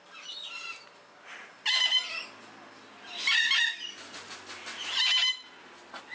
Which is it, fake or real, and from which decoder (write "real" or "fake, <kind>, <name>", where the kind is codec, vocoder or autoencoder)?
real